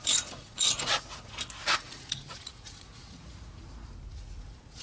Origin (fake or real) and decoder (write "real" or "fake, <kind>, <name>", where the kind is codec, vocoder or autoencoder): fake, vocoder, Vocos